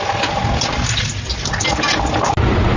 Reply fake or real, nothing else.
real